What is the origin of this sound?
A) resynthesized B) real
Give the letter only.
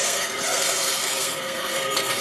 A